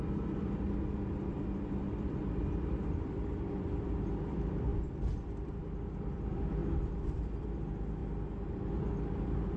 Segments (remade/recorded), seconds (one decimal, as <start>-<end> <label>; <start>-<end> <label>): 0.0-6.6 remade; 6.6-7.1 recorded; 7.1-8.0 remade; 8.0-8.9 recorded; 8.9-9.6 remade